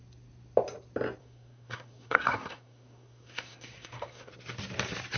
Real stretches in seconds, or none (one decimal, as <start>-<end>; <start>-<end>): 0.0-1.2; 4.3-5.2